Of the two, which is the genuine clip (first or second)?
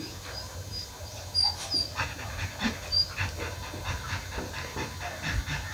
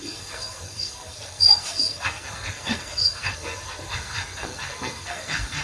first